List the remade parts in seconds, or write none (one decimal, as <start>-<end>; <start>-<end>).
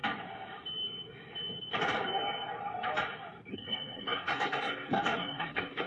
3.5-5.9